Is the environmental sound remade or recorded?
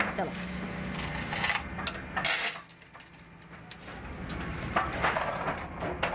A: recorded